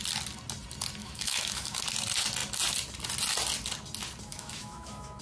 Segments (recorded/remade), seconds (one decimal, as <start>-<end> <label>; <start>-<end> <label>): 0.0-1.0 recorded; 1.0-1.8 remade; 1.8-4.3 recorded; 4.3-5.2 remade